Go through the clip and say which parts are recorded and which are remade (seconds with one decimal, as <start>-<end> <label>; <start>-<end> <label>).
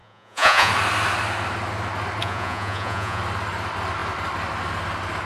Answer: 0.0-0.7 remade; 0.7-2.2 recorded; 2.2-3.2 remade; 3.2-5.3 recorded